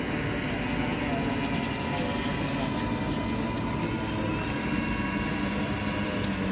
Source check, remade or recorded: recorded